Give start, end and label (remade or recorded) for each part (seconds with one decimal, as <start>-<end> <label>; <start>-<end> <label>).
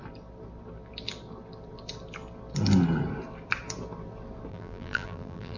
0.0-4.5 recorded; 4.5-5.6 remade